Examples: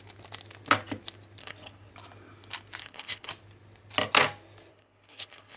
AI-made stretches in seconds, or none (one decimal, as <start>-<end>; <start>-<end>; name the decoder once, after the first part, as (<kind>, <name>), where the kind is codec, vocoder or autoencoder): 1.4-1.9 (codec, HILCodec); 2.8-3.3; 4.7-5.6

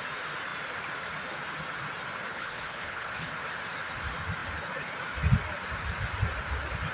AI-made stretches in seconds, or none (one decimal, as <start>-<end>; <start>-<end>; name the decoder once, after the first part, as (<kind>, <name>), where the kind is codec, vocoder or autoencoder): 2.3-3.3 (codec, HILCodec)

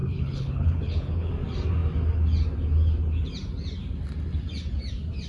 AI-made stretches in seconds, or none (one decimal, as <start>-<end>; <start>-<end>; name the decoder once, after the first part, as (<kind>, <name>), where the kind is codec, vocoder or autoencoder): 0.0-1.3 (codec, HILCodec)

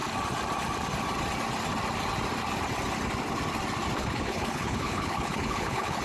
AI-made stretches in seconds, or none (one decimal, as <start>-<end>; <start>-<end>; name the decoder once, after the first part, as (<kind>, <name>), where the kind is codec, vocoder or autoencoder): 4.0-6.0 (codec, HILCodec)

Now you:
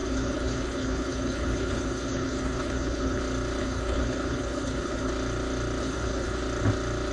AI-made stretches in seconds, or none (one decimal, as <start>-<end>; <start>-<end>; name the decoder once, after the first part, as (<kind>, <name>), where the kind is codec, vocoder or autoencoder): 0.0-3.2 (codec, HILCodec); 3.6-5.1; 5.8-6.4